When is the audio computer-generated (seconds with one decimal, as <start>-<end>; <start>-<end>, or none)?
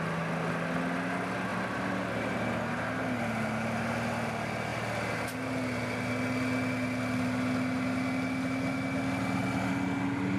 none